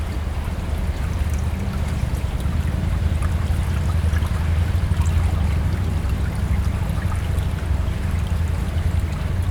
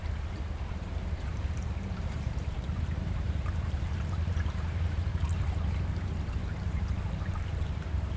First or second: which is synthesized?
second